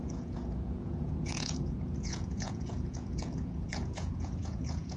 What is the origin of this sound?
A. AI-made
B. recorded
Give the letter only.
A